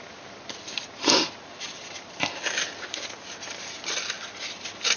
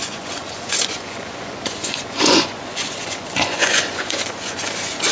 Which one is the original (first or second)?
first